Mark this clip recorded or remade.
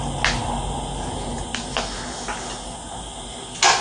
recorded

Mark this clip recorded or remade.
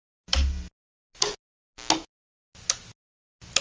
recorded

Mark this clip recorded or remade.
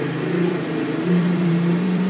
remade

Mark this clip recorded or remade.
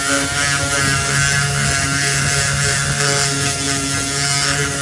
recorded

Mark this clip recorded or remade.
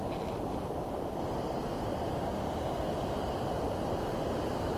recorded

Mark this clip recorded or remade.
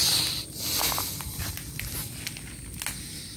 recorded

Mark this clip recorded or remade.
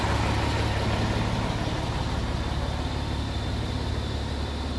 recorded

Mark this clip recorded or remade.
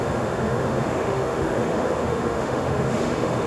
remade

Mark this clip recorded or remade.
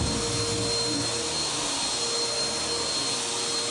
recorded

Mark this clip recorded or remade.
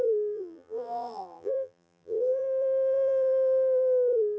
remade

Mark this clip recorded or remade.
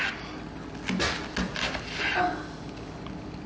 recorded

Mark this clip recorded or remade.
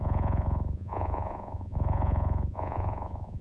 remade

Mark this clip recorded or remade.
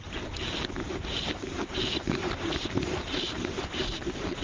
remade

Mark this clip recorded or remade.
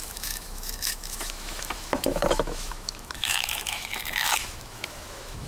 remade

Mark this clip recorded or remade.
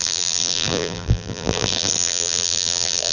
remade